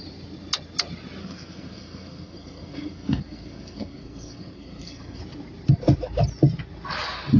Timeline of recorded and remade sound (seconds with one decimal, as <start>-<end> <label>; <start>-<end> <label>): 0.0-1.2 recorded; 1.2-5.2 remade; 5.2-7.4 recorded